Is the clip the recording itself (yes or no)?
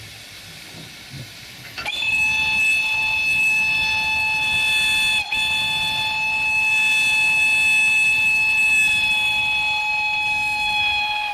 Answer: yes